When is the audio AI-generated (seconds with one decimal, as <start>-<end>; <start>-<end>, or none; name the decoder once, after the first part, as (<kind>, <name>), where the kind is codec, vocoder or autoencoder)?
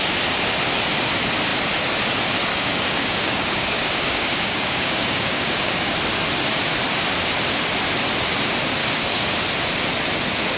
2.5-5.9 (codec, DAC); 8.8-9.3